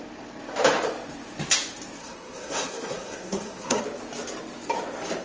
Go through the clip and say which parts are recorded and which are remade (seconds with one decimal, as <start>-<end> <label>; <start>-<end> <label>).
0.0-2.0 recorded; 2.0-3.8 remade; 3.8-5.2 recorded